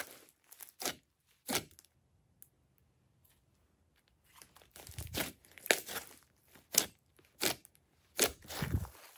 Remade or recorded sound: recorded